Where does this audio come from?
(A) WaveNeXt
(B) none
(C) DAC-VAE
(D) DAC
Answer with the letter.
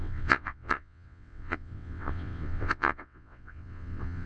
A